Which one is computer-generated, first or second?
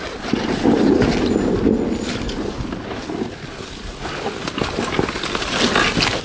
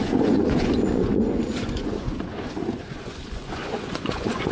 second